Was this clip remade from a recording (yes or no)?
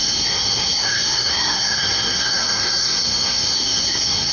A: yes